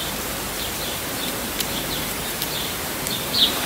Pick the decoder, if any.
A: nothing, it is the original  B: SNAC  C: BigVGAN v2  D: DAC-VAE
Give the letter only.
C